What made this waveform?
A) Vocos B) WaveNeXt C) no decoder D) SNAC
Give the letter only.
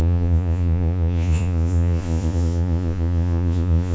A